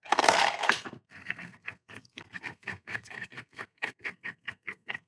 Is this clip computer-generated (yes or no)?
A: yes